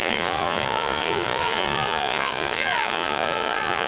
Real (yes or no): no